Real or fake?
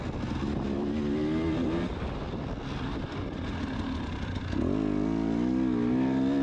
real